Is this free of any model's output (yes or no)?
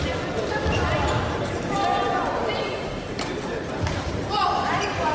no